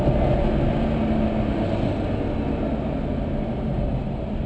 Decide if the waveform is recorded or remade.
recorded